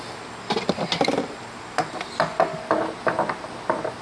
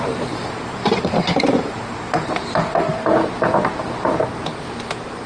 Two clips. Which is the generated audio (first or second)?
second